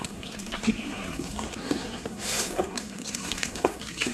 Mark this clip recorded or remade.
remade